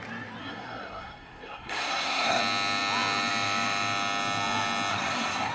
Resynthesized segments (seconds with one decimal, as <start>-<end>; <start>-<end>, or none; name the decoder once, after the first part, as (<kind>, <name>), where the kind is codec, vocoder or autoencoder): 0.4-2.4 (codec, SNAC); 4.9-5.5